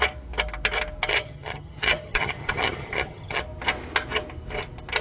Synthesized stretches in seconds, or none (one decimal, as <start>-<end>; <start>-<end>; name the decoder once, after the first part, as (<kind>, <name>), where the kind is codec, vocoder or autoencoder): 1.1-3.4 (vocoder, HiFi-GAN)